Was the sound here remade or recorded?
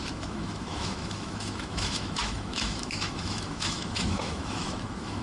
remade